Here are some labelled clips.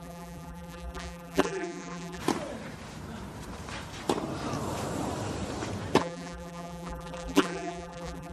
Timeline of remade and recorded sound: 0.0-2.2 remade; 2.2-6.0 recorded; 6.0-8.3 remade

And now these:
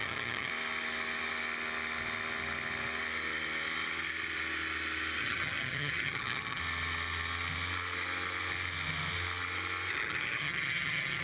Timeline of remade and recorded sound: 0.0-0.5 remade; 0.5-5.2 recorded; 5.2-6.6 remade; 6.6-9.9 recorded; 9.9-11.2 remade

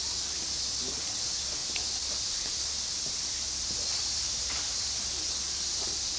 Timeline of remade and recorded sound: 0.0-1.6 recorded; 1.6-5.3 remade; 5.3-6.2 recorded